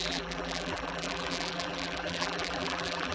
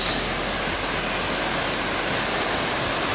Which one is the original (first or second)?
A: second